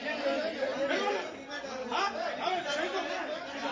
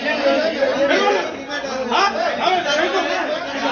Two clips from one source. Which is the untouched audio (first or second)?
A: second